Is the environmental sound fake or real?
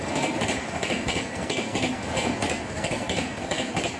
fake